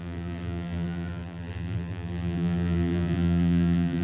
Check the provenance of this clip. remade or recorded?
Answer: remade